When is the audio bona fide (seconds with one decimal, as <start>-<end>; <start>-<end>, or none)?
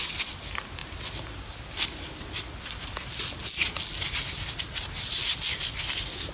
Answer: 0.0-6.3